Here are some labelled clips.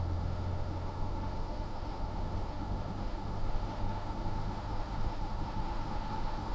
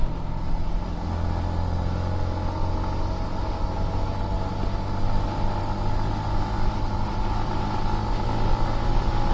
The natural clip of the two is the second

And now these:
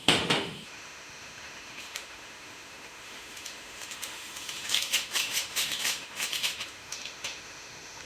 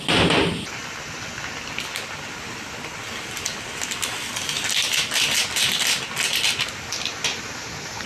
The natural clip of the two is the second